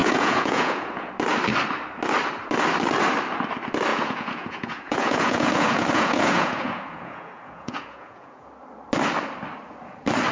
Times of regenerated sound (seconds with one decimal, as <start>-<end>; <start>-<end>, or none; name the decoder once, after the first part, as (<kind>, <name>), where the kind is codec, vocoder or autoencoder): 0.0-1.1 (vocoder, Vocos); 3.9-8.5